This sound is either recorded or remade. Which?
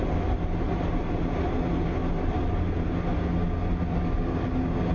recorded